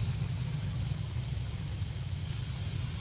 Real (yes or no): yes